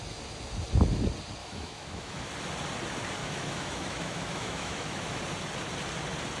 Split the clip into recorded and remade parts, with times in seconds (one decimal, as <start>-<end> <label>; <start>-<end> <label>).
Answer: 0.0-1.4 recorded; 1.4-2.3 remade; 2.3-3.2 recorded; 3.2-5.2 remade; 5.2-6.4 recorded